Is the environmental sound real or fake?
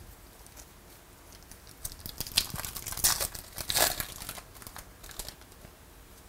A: real